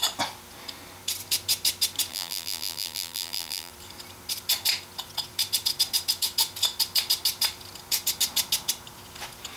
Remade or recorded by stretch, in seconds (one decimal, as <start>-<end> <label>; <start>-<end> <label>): 0.0-2.1 recorded; 2.1-3.7 remade; 3.7-9.6 recorded